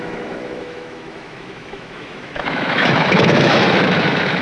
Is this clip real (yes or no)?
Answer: no